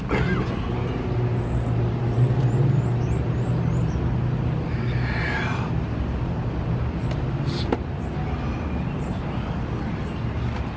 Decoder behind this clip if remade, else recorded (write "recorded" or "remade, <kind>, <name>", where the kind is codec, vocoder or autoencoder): recorded